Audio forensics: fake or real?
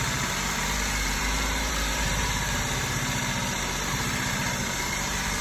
fake